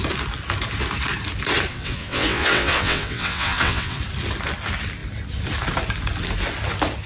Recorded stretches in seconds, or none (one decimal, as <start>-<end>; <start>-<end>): 0.0-1.7; 4.0-7.1

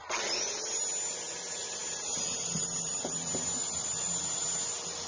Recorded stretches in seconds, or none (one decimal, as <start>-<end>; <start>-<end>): 0.0-5.1

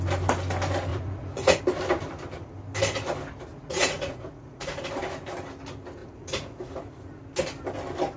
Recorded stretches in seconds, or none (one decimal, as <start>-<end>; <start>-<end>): 0.0-0.9; 1.6-3.5; 4.8-6.0; 6.9-8.2

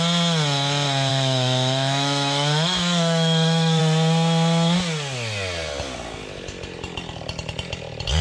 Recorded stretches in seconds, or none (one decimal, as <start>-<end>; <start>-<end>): 0.0-1.1; 3.8-8.2